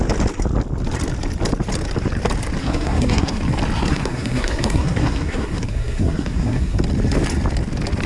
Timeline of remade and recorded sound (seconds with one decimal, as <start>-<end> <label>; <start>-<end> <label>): 0.0-2.6 recorded; 2.6-3.4 remade; 3.4-3.9 recorded; 3.9-6.8 remade; 6.8-8.1 recorded